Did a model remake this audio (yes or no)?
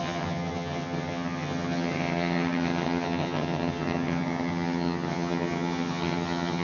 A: yes